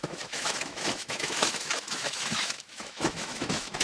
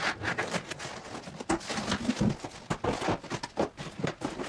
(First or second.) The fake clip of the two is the first